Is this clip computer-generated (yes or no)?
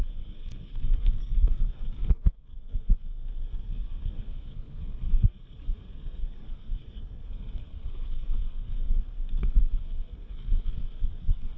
yes